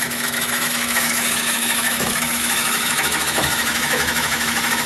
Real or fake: fake